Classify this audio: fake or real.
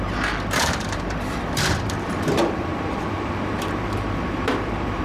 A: fake